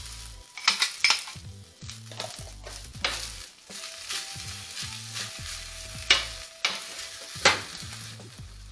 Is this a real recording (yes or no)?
yes